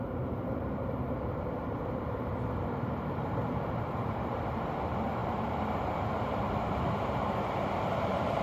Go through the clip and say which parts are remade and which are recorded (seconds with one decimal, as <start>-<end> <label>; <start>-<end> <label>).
0.0-8.4 remade